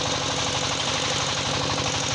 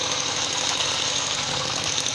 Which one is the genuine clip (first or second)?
first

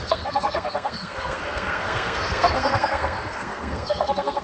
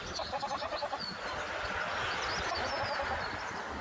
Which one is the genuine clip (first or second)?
second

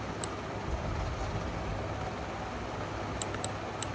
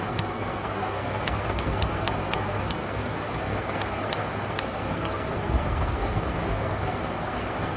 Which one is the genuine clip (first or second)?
first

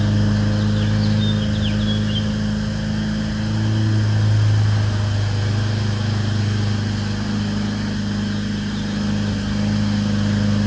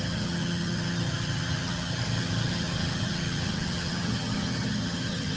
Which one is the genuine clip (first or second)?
first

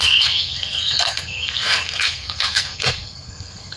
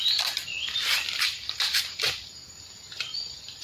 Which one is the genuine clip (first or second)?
second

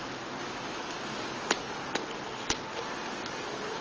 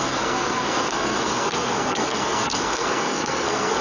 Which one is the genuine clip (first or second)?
first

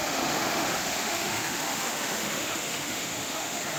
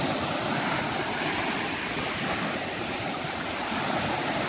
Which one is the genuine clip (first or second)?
second